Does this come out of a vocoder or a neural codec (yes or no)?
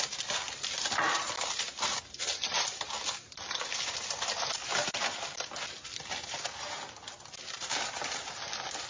no